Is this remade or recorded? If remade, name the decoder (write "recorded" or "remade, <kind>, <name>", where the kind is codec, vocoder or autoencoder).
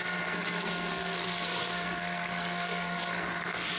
remade, codec, SNAC